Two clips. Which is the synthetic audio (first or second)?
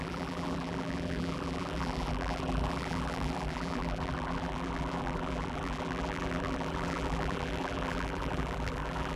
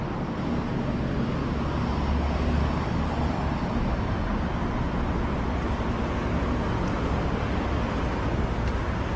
first